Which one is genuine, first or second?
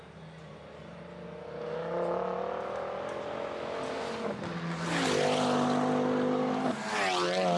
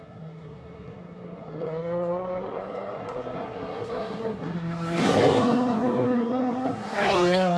first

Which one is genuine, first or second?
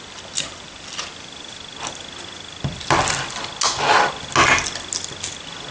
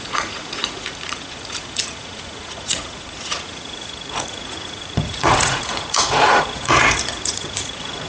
first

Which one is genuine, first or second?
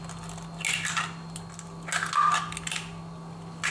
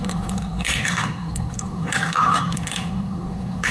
first